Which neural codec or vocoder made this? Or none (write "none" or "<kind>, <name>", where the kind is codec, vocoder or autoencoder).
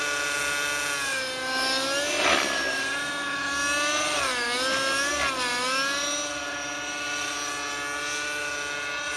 none